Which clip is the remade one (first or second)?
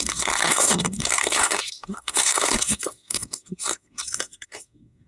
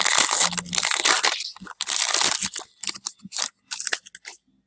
first